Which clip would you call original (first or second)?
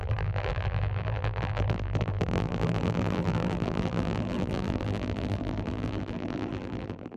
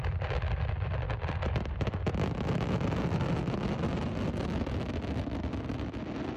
second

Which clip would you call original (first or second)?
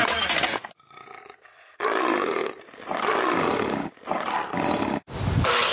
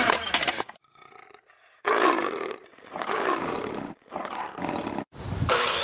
first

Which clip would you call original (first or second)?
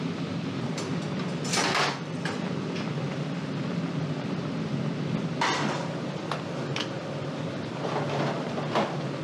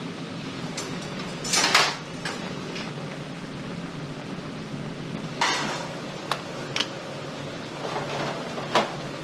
second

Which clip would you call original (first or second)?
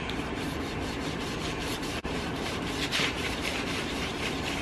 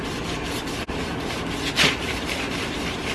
second